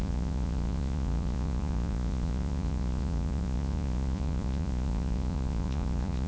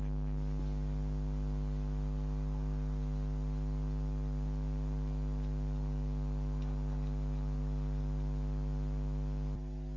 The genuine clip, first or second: second